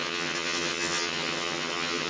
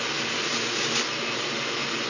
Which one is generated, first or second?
first